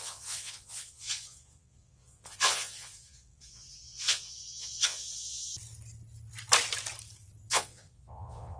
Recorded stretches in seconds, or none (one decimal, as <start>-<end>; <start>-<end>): 5.5-7.5